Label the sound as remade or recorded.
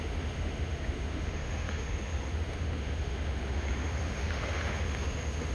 remade